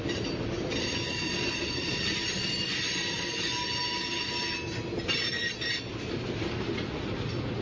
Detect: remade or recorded recorded